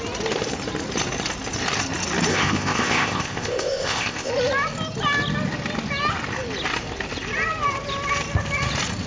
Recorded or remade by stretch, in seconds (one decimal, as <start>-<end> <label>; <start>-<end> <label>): 0.0-2.3 recorded; 2.3-4.3 remade; 4.3-9.1 recorded